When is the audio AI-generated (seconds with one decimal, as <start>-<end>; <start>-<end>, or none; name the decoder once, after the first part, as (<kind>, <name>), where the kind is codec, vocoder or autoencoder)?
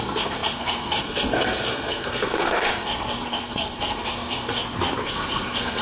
0.0-4.6 (codec, SNAC); 5.1-5.8